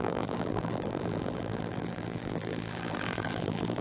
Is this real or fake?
fake